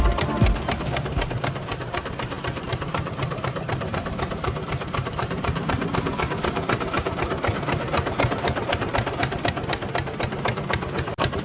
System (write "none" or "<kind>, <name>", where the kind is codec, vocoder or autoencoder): vocoder, BigVGAN v2